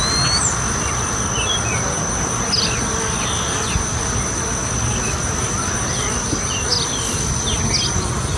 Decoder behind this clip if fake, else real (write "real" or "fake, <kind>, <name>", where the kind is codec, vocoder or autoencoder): real